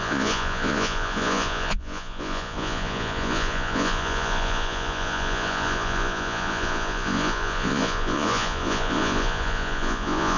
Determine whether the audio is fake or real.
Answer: fake